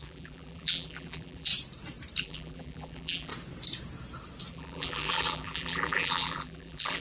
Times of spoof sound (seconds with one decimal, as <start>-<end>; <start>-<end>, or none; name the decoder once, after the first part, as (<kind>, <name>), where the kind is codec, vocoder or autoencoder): 0.0-1.5 (vocoder, BigVGAN v2); 2.2-3.3; 4.5-7.0